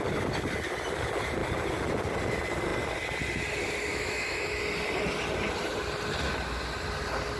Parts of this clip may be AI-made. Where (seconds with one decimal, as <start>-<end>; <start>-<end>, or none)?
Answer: 3.9-4.6